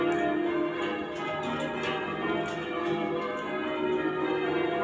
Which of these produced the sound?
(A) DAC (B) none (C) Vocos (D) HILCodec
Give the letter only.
B